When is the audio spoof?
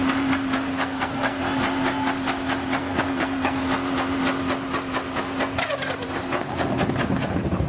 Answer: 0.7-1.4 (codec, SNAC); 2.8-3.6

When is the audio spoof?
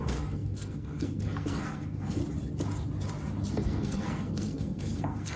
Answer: 0.0-2.2 (codec, SNAC); 3.5-5.4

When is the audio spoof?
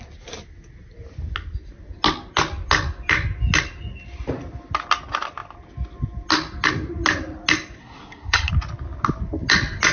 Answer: 7.8-8.5 (codec, SNAC)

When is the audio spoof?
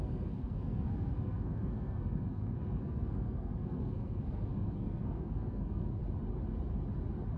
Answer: 0.0-6.0 (codec, SNAC)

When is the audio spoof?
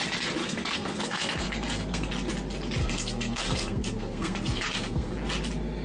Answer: 0.4-2.1 (codec, SNAC); 2.8-5.1